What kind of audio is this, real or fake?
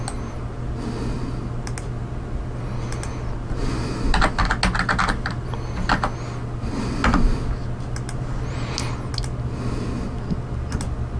real